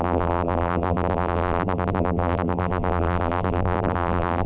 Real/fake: fake